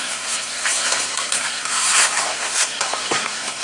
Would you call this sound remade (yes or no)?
yes